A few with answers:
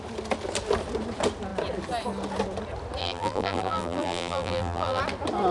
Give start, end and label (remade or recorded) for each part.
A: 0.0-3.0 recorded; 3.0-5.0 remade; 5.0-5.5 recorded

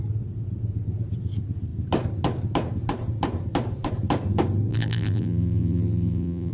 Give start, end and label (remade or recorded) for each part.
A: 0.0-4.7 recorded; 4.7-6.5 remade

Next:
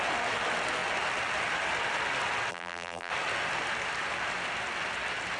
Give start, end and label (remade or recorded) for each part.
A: 0.0-2.5 recorded; 2.5-3.1 remade; 3.1-5.4 recorded

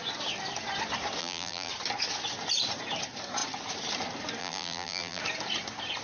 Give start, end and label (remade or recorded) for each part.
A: 0.0-1.2 recorded; 1.2-1.7 remade; 1.7-4.4 recorded; 4.4-5.2 remade; 5.2-6.0 recorded

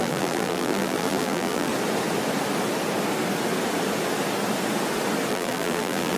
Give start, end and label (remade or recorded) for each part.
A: 0.0-1.7 remade; 1.7-5.3 recorded; 5.3-6.2 remade

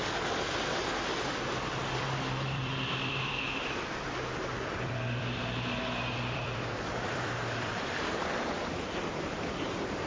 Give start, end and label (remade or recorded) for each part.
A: 0.0-0.7 recorded; 0.7-10.1 remade

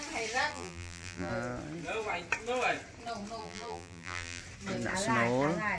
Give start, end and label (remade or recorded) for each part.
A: 0.0-0.5 recorded; 0.5-1.3 remade; 1.3-3.4 recorded; 3.4-4.4 remade; 4.4-5.8 recorded